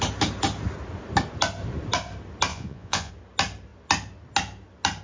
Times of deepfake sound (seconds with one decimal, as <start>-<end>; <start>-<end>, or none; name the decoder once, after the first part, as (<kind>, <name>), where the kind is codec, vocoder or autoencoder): 2.5-3.1 (vocoder, Vocos)